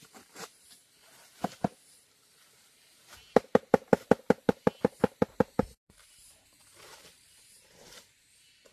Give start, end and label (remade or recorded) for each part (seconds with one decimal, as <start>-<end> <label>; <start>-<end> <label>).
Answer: 0.0-3.9 remade; 3.9-4.6 recorded; 4.6-8.7 remade